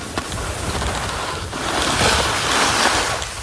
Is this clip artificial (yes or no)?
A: no